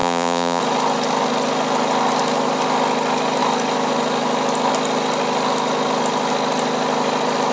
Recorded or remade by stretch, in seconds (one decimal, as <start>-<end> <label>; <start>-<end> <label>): 0.0-0.6 remade; 0.6-7.5 recorded

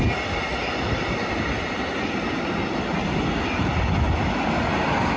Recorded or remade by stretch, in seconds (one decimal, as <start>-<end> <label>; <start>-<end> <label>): 0.0-5.2 recorded